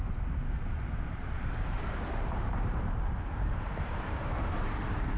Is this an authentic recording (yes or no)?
no